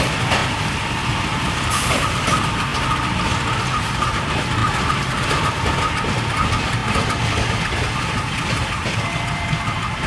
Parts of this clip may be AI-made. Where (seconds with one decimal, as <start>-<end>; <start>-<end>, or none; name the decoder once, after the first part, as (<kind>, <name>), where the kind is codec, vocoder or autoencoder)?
0.0-0.4 (vocoder, BigVGAN v2); 0.9-2.7; 3.6-6.8; 7.8-10.1